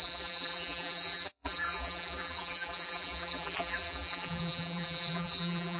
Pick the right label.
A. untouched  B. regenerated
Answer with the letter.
B